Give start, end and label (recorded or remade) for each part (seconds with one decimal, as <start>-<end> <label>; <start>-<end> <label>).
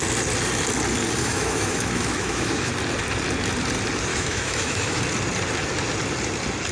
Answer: 0.0-1.2 recorded; 1.2-2.7 remade; 2.7-4.1 recorded; 4.1-5.0 remade; 5.0-6.7 recorded